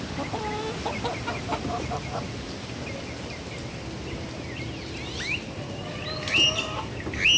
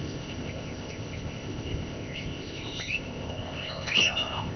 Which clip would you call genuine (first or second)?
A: first